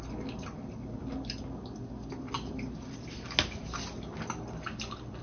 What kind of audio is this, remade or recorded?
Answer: recorded